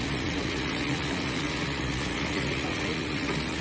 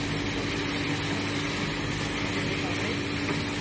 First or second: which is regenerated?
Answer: first